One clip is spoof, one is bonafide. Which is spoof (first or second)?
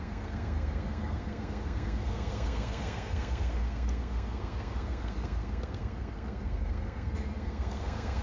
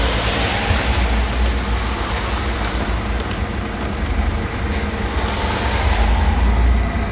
first